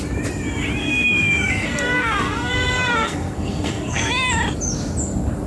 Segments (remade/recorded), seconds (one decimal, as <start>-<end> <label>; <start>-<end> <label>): 0.0-0.8 recorded; 0.8-4.1 remade; 4.1-5.5 recorded